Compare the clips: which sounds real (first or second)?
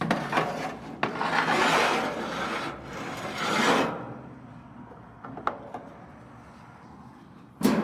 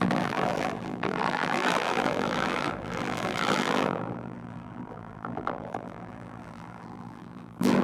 first